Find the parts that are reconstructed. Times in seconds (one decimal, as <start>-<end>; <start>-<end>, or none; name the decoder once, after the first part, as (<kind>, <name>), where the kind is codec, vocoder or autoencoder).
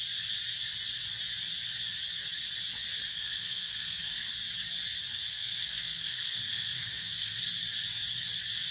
3.1-4.3 (codec, SNAC); 5.3-7.4